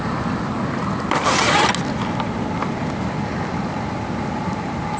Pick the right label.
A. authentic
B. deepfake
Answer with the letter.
A